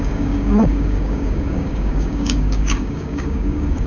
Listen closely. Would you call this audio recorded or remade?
remade